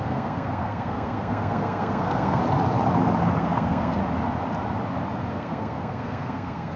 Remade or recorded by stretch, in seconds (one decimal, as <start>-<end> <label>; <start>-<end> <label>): 0.0-2.4 remade; 2.4-3.4 recorded; 3.4-4.0 remade; 4.0-5.3 recorded; 5.3-6.8 remade